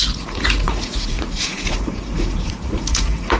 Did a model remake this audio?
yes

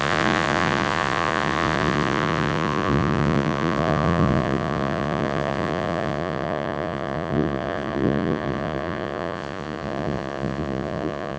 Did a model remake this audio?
yes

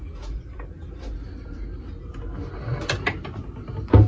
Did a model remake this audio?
no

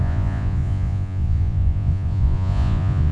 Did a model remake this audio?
yes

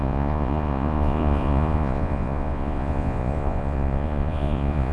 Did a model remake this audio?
yes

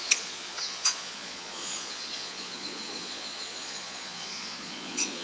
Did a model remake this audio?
yes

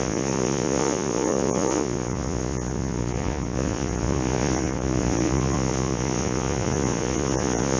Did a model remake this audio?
yes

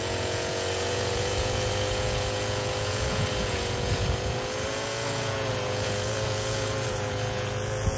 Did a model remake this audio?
yes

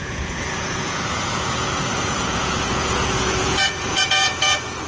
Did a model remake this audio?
yes